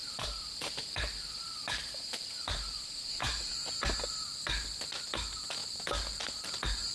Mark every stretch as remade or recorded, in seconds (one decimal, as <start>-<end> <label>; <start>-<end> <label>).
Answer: 0.0-3.5 remade; 3.5-6.9 recorded